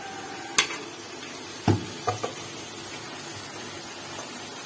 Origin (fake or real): real